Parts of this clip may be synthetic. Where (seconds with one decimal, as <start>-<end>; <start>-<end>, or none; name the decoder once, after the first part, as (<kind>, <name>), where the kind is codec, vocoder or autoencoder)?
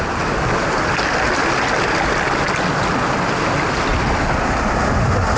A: none